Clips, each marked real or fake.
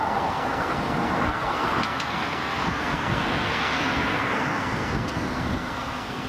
fake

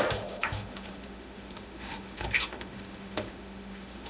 fake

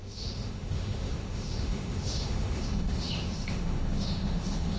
fake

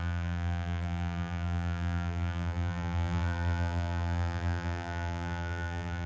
fake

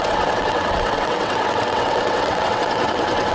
fake